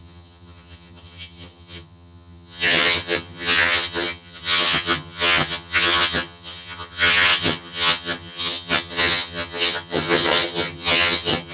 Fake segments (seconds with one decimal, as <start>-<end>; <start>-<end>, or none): 0.0-11.5